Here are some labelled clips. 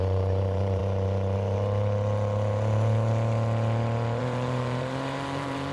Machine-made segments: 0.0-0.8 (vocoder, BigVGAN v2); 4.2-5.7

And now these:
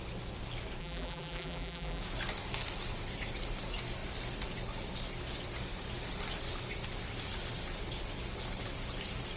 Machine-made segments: 0.8-2.0 (vocoder, BigVGAN v2)